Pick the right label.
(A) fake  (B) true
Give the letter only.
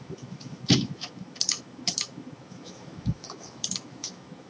A